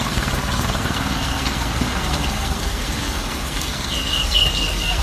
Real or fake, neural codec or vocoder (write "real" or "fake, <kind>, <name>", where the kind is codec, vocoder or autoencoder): fake, codec, SNAC